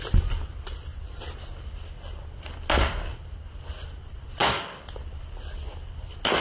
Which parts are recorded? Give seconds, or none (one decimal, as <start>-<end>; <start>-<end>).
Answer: 0.0-6.4